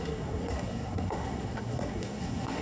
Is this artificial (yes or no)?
yes